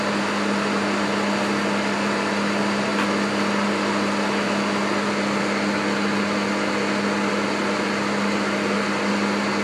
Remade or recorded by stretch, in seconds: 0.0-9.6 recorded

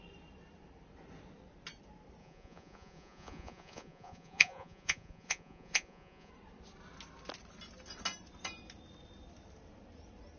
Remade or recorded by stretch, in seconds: 0.0-2.2 recorded; 2.2-6.3 remade; 6.3-10.4 recorded

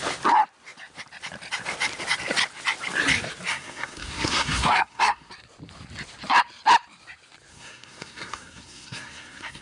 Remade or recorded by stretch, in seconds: 0.0-3.5 recorded; 3.5-5.3 remade; 5.3-7.5 recorded; 7.5-9.6 remade

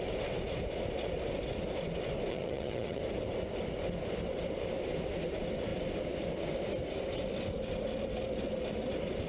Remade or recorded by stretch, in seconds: 0.0-2.3 recorded; 2.3-3.0 remade; 3.0-9.3 recorded

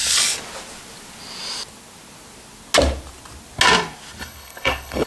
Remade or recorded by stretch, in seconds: 0.0-4.2 recorded; 4.2-5.1 remade

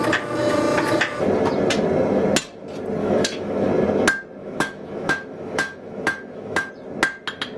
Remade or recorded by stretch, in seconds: 0.0-3.0 recorded; 3.0-3.7 remade; 3.7-4.4 recorded; 4.4-6.7 remade; 6.7-7.6 recorded

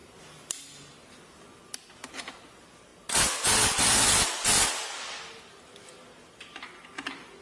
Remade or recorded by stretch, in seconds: 0.0-7.4 recorded

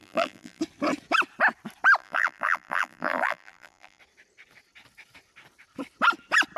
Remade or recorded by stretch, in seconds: 0.0-0.6 remade; 0.6-2.0 recorded; 2.0-4.0 remade; 4.0-6.6 recorded